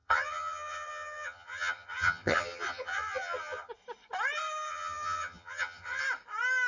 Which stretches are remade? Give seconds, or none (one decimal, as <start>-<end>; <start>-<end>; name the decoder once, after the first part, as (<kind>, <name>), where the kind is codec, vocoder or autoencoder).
0.0-3.7 (vocoder, HiFi-GAN); 4.7-6.0